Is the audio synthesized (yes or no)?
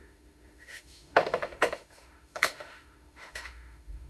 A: yes